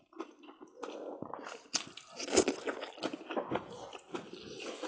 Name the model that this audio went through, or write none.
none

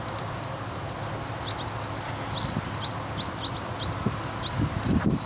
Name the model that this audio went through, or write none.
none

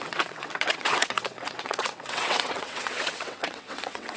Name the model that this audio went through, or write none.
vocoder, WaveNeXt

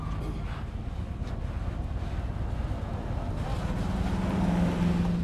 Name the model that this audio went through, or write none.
none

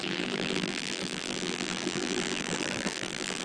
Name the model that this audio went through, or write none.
vocoder, BigVGAN v2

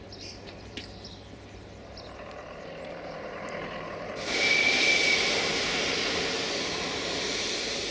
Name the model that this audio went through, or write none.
vocoder, BigVGAN v2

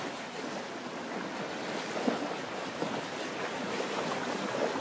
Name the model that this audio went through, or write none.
none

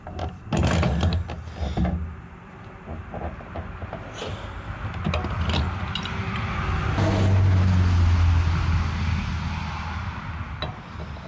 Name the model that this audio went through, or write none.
none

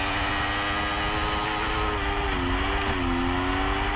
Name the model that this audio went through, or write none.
none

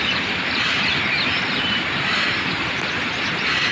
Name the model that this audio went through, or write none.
none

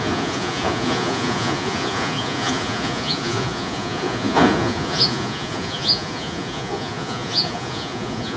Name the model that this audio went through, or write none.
vocoder, Vocos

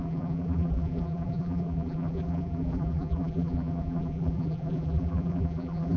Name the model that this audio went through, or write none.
vocoder, BigVGAN v2